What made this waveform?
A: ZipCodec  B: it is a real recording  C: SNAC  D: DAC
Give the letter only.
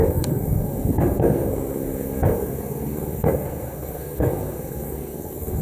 C